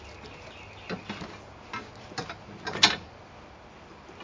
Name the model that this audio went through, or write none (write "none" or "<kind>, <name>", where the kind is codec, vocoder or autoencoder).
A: none